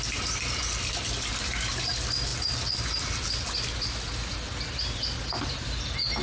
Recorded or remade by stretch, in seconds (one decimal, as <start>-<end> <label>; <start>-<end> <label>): 0.0-6.2 recorded